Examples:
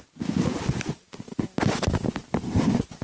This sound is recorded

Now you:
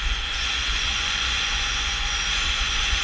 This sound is remade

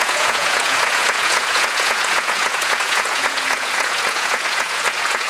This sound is remade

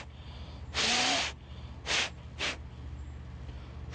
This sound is recorded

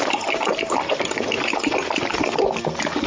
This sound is recorded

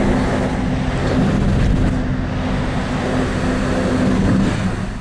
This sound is recorded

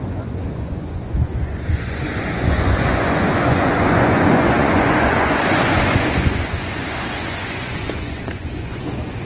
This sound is remade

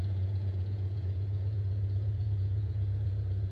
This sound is remade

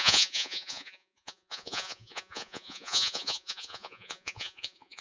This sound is remade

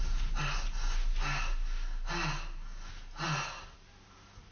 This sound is recorded